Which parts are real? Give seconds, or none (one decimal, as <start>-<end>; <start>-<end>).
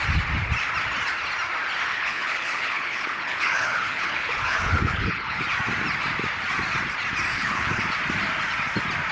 0.0-1.9; 5.4-7.3; 7.8-9.1